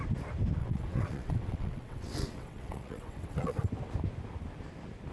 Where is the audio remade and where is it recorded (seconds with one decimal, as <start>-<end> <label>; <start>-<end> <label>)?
0.0-0.6 recorded; 0.6-3.7 remade; 3.7-5.1 recorded